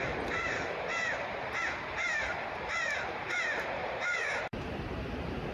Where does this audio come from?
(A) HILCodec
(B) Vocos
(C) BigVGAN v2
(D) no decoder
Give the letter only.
C